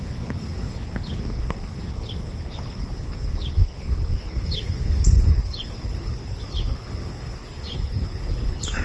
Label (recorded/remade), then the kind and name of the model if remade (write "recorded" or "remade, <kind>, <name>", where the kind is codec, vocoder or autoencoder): remade, codec, HILCodec